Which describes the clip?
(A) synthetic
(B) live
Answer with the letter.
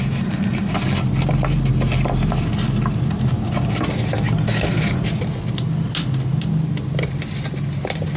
B